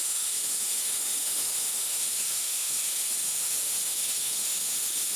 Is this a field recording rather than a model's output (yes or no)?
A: no